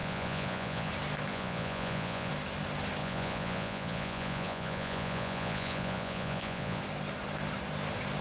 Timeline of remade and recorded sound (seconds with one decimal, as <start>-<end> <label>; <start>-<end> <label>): 0.0-0.9 remade; 0.9-1.3 recorded; 1.3-2.3 remade; 2.3-3.0 recorded; 3.0-6.8 remade; 6.8-8.2 recorded